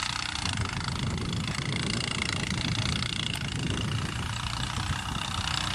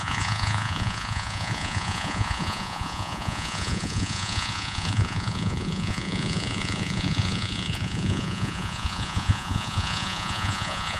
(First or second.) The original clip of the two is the first